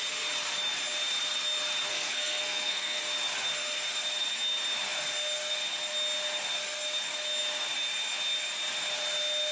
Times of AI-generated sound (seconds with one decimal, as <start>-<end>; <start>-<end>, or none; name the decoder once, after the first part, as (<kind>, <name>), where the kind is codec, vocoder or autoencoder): 1.9-3.0 (codec, SNAC)